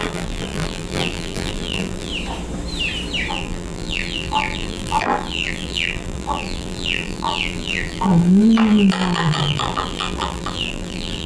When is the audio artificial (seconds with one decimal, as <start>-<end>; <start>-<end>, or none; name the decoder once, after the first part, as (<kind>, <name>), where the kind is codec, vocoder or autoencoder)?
0.0-2.1 (vocoder, BigVGAN v2); 3.3-11.3